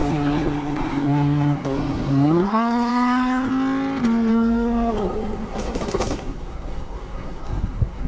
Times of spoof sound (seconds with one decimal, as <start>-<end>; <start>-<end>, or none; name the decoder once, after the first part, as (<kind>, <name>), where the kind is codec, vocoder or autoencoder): 0.0-3.5 (codec, SNAC); 4.3-8.1